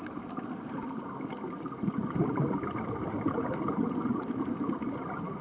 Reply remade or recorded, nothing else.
recorded